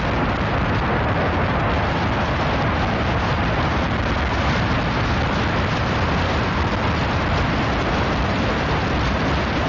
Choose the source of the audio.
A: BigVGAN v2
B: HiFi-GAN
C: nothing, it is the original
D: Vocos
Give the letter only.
C